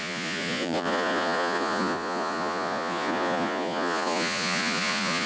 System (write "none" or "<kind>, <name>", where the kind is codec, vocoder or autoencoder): vocoder, Vocos